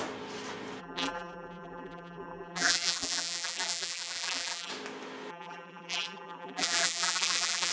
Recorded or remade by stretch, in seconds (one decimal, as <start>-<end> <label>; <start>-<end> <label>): 0.0-0.8 recorded; 0.8-4.7 remade; 4.7-5.3 recorded; 5.3-7.7 remade